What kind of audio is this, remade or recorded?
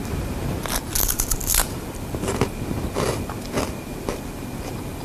recorded